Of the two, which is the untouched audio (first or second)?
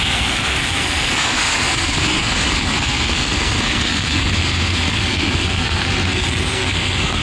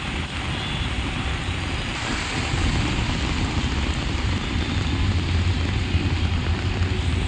second